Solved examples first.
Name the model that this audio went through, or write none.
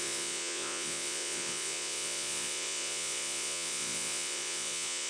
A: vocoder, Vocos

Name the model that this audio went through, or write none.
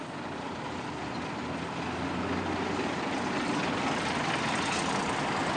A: none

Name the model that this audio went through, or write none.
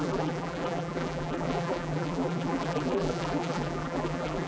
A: vocoder, BigVGAN v2